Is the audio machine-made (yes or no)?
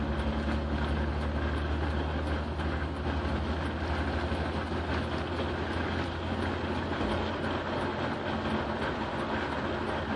no